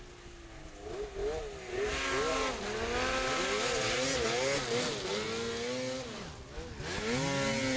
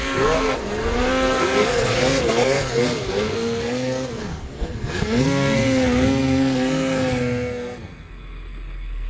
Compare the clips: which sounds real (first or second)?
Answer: first